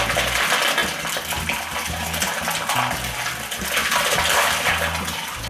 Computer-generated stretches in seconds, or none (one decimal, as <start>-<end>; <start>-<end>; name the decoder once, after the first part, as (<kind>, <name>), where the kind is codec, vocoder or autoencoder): 3.8-4.7 (vocoder, BigVGAN v2)